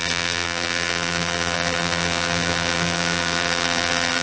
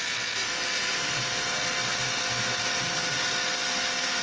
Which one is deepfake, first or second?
first